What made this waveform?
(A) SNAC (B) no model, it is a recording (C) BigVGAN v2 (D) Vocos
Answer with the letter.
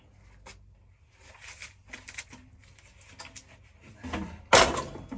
B